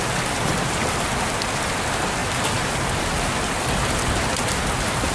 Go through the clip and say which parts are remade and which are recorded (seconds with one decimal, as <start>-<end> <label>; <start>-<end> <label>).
0.0-2.2 recorded; 2.2-2.7 remade; 2.7-5.1 recorded